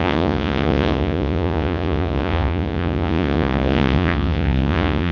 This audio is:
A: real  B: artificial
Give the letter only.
B